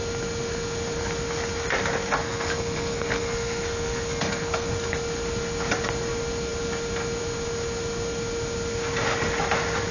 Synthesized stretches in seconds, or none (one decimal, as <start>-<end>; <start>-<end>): 2.2-4.7